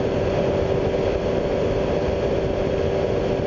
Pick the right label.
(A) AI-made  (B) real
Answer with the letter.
B